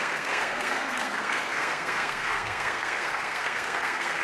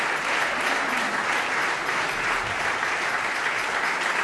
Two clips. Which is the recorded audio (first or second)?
second